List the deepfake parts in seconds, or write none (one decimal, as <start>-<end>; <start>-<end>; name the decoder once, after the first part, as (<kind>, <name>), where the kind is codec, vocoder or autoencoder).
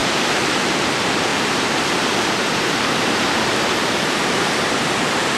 0.0-5.4 (vocoder, BigVGAN v2)